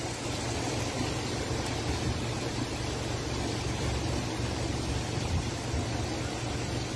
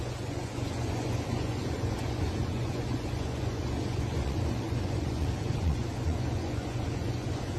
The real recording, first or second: first